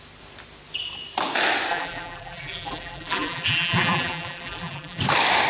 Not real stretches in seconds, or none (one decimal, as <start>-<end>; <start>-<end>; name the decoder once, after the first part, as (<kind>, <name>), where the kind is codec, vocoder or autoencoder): 1.7-5.0 (vocoder, BigVGAN v2)